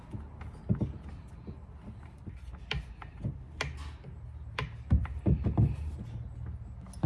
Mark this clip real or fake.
real